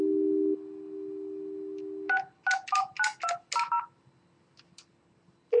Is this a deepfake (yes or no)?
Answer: no